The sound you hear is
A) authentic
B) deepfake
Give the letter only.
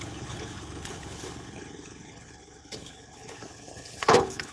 B